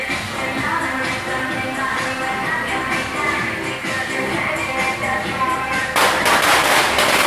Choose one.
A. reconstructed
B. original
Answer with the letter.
B